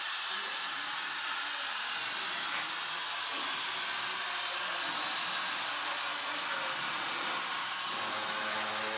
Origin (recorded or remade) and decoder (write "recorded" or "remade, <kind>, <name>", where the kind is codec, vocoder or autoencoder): recorded